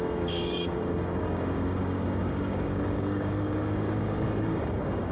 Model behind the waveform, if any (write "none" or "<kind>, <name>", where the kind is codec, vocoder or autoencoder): codec, DAC